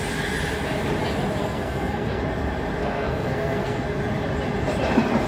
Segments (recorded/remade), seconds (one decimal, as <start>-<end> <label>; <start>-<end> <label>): 0.0-1.4 recorded; 1.4-2.2 remade; 2.2-2.8 recorded; 2.8-4.0 remade; 4.0-5.3 recorded